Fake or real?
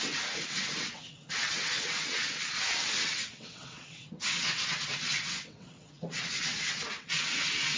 fake